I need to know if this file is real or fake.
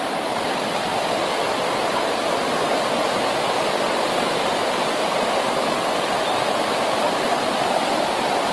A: real